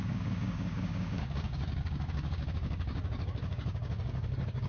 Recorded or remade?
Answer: remade